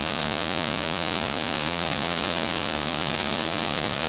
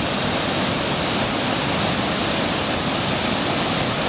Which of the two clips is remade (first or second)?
first